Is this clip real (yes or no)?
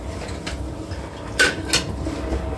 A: yes